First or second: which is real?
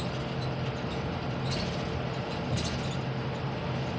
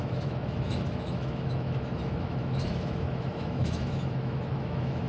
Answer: first